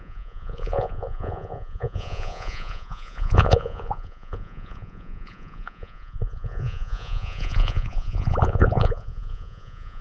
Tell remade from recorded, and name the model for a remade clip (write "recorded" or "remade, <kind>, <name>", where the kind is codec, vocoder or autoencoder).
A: remade, vocoder, Vocos